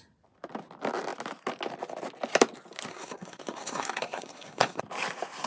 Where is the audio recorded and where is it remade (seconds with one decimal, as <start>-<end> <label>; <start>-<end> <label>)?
0.0-2.9 recorded; 2.9-4.8 remade; 4.8-5.5 recorded